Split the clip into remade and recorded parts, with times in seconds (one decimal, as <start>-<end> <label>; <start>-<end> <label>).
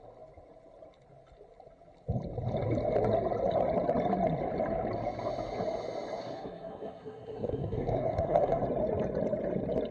0.0-6.2 recorded; 6.2-8.6 remade; 8.6-9.9 recorded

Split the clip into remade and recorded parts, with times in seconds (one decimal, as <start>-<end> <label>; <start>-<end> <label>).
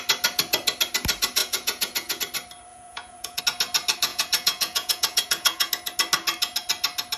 0.0-1.4 recorded; 1.4-2.2 remade; 2.2-2.7 recorded; 2.7-3.4 remade; 3.4-4.1 recorded; 4.1-5.7 remade; 5.7-7.2 recorded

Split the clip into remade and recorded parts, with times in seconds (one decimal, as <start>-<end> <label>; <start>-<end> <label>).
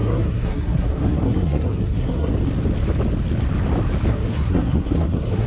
0.0-2.3 remade; 2.3-4.1 recorded; 4.1-5.5 remade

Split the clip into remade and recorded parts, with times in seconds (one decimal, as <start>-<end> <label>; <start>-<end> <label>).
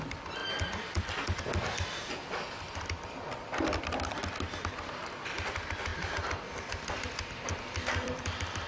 0.0-0.4 recorded; 0.4-4.2 remade; 4.2-5.9 recorded; 5.9-8.7 remade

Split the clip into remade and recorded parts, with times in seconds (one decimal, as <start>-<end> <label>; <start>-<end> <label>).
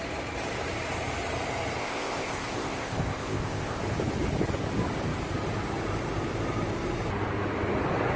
0.0-1.8 recorded; 1.8-3.8 remade; 3.8-8.2 recorded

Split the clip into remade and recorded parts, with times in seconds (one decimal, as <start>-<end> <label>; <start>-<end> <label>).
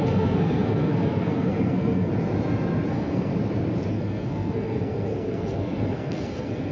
0.0-2.1 remade; 2.1-2.9 recorded; 2.9-3.3 remade; 3.3-3.9 recorded; 3.9-6.7 remade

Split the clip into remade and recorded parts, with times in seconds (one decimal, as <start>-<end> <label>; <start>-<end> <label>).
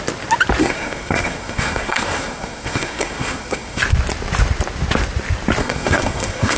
0.0-0.6 recorded; 0.6-3.8 remade; 3.8-5.6 recorded; 5.6-6.6 remade